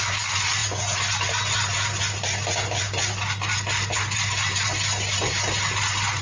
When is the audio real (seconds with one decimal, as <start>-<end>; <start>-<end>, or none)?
0.0-6.2